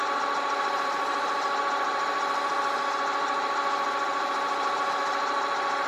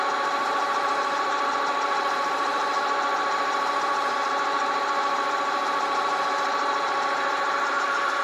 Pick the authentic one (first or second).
first